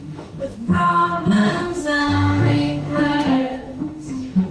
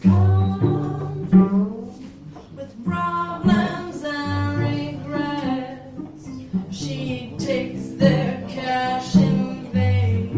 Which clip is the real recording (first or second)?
second